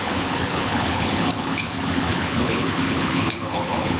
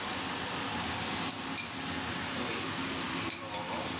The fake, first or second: first